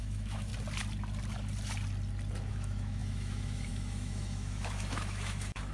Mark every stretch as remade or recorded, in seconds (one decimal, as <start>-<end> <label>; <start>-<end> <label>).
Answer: 0.0-0.5 remade; 0.5-2.5 recorded; 2.5-5.7 remade